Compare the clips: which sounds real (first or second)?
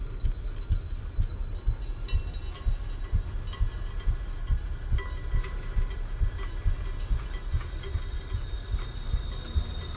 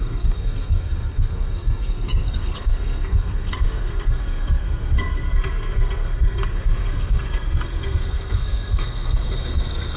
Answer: first